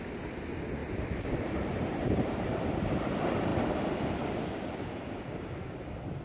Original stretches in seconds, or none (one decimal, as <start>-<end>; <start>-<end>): 0.0-0.8; 2.1-6.2